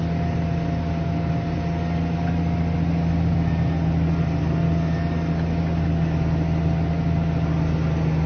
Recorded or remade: recorded